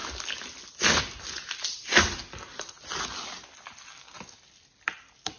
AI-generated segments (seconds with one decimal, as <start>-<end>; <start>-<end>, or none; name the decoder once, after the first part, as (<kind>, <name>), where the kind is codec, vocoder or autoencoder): none